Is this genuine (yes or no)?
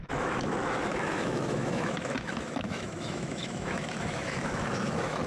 no